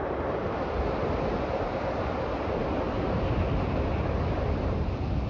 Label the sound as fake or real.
real